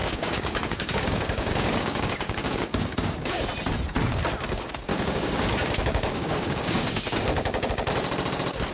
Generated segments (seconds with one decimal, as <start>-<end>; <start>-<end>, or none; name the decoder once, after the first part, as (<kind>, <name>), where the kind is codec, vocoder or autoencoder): 0.0-3.4 (codec, DAC); 4.9-7.7

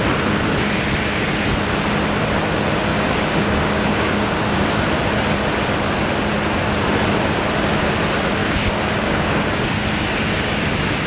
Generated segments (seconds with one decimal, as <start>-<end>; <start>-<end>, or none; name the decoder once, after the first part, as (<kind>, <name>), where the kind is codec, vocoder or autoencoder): 2.9-4.6 (codec, DAC); 8.4-9.9

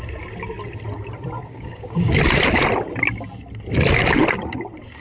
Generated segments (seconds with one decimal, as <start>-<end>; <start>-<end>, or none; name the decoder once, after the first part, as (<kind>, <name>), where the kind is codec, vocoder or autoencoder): 1.5-2.1 (codec, DAC)

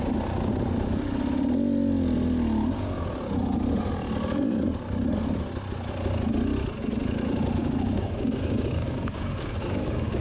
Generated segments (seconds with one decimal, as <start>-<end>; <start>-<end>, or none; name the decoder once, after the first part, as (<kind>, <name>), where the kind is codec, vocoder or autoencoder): 7.6-10.2 (codec, DAC)

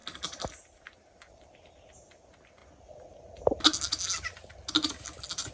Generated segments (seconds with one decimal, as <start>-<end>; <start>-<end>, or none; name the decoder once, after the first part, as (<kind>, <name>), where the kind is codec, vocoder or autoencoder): none

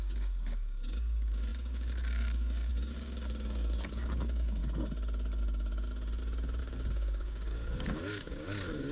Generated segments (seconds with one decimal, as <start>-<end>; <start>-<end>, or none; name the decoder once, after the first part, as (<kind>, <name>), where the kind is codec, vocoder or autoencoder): 0.0-4.6 (codec, DAC); 6.6-8.9